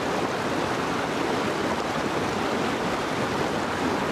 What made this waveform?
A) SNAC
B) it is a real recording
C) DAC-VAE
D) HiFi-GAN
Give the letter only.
B